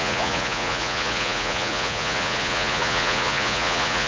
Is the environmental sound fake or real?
fake